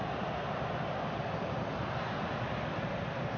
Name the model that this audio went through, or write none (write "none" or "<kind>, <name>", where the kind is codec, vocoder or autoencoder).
none